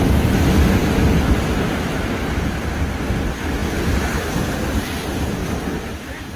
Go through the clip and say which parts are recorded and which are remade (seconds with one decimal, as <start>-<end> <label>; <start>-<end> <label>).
0.0-6.4 recorded